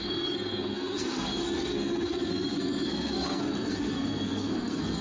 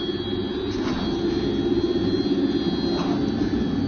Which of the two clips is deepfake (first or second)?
first